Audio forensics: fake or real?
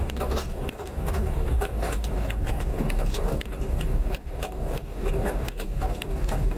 fake